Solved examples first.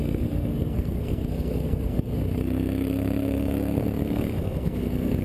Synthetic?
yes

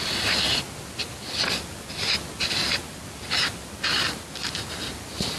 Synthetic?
no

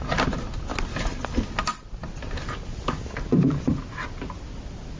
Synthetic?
no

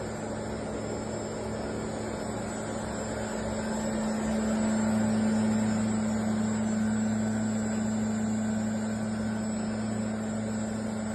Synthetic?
no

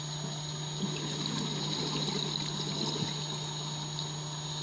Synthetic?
no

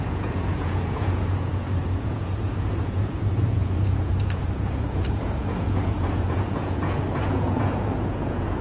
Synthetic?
yes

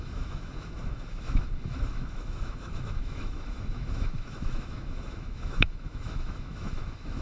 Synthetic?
yes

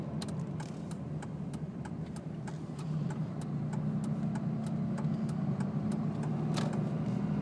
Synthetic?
no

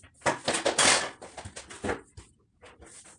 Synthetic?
no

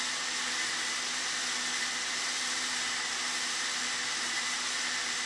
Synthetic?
no